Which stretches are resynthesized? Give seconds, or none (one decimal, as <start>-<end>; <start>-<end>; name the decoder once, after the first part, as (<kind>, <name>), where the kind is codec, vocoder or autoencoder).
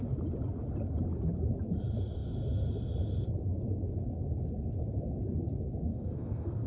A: 5.9-6.7 (codec, SNAC)